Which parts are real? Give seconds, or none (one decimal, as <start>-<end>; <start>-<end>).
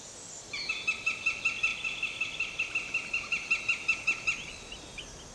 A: 0.0-5.3